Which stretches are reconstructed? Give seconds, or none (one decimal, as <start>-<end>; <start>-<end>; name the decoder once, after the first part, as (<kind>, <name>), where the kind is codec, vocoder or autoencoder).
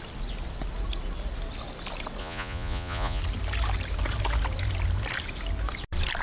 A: 2.2-3.2 (vocoder, Vocos)